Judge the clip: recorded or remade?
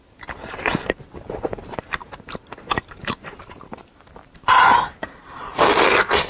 remade